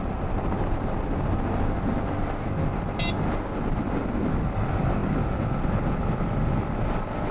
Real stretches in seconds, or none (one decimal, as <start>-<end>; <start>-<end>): 0.0-7.3